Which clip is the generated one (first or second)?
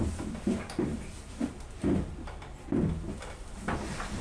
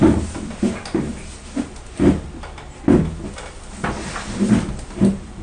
first